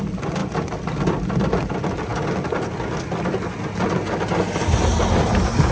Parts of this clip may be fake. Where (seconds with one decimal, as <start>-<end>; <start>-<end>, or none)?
0.4-1.1